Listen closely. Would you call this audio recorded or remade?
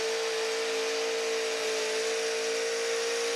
recorded